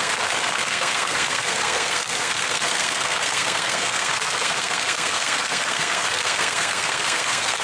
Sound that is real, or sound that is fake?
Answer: fake